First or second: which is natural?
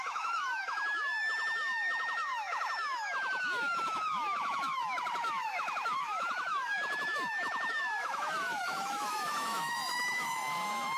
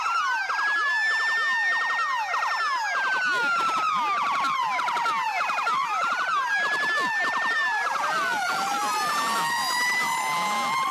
second